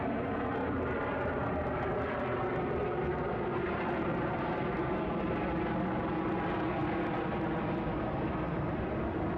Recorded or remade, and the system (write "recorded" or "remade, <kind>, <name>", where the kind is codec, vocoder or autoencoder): recorded